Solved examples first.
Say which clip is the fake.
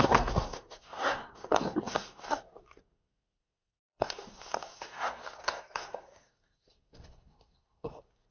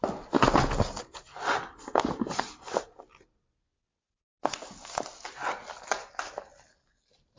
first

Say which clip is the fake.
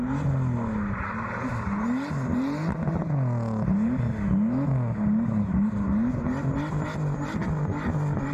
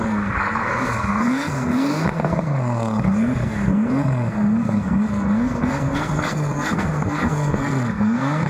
second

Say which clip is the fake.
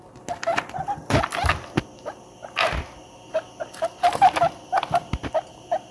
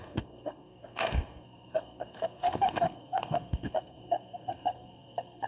second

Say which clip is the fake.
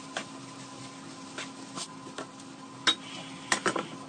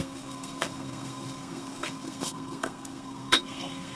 second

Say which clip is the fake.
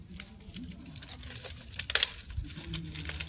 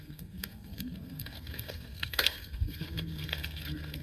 second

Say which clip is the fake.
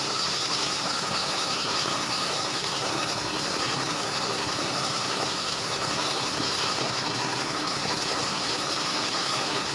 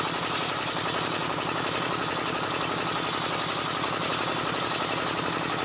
first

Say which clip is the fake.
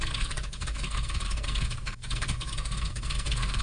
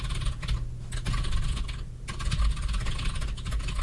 first